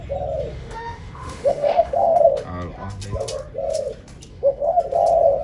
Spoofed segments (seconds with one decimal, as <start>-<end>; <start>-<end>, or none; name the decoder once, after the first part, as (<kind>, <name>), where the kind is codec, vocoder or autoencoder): 0.5-2.2 (autoencoder, DAC-VAE); 4.3-4.8